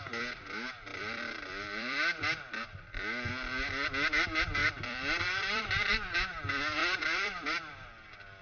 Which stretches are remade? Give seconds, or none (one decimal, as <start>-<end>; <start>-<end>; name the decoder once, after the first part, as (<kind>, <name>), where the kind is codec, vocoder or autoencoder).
0.9-3.3 (vocoder, BigVGAN v2); 4.6-5.9; 6.8-7.9